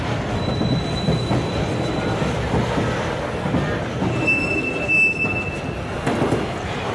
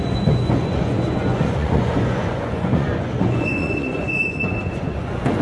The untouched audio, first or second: first